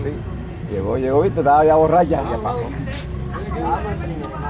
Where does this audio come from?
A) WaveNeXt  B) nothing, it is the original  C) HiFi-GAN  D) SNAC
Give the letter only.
B